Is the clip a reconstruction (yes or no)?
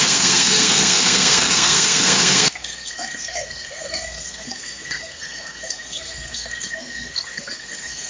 yes